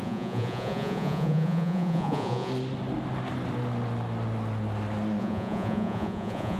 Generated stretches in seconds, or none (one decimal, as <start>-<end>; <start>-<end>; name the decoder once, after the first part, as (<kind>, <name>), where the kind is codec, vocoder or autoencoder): 0.0-2.5 (vocoder, Vocos); 5.2-6.6